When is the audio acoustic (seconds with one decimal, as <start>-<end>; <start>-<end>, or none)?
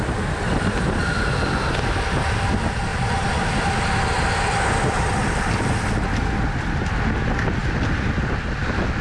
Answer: 0.0-9.0